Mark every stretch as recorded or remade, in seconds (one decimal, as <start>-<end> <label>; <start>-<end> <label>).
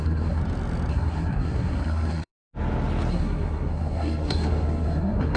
0.0-0.4 remade; 0.4-0.9 recorded; 0.9-2.3 remade; 2.3-3.1 recorded; 3.1-5.4 remade